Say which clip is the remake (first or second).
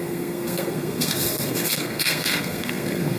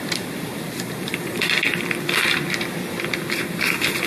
first